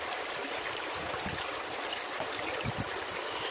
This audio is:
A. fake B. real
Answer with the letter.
B